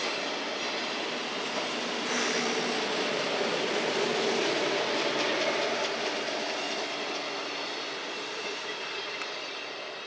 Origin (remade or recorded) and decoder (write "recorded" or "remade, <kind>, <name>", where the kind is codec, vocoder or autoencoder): recorded